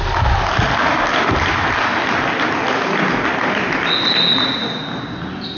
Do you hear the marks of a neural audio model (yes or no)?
no